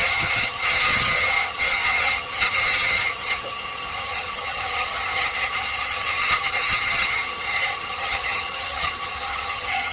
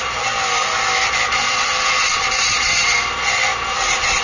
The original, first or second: second